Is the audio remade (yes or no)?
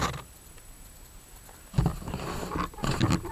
no